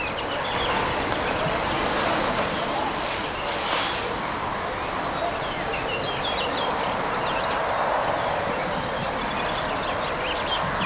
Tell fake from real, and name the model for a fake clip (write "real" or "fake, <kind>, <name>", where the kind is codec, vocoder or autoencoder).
real